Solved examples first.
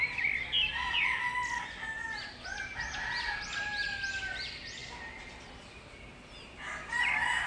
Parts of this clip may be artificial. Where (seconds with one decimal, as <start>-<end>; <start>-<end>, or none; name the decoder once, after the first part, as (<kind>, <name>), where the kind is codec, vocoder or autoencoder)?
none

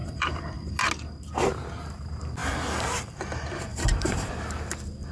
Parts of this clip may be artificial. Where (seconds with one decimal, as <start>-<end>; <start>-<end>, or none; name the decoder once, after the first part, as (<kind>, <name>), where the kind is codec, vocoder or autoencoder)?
0.0-0.8 (vocoder, BigVGAN v2); 2.4-3.2; 3.7-4.3

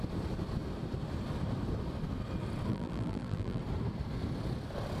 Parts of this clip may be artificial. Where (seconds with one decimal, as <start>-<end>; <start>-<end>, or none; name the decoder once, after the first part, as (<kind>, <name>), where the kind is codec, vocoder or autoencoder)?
2.7-3.6 (vocoder, BigVGAN v2)

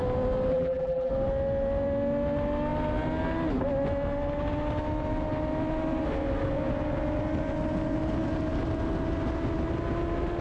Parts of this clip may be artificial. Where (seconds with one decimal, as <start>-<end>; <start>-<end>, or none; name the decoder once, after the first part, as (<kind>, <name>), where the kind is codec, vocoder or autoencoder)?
0.5-1.1 (vocoder, BigVGAN v2)